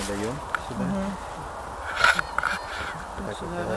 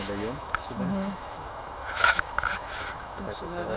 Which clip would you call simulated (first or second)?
second